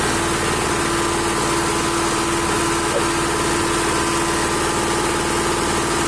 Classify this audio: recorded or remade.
recorded